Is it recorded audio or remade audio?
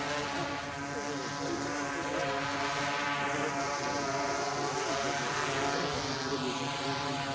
recorded